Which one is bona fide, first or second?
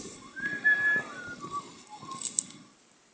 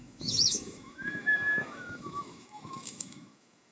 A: first